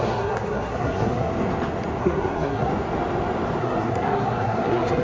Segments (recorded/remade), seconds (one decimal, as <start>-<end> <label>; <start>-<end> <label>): 0.0-1.3 remade; 1.3-2.0 recorded; 2.0-2.7 remade; 2.7-3.6 recorded; 3.6-5.0 remade